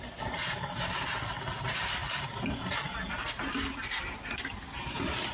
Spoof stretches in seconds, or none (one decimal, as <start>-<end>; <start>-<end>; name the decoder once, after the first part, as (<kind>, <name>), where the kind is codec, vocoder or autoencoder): none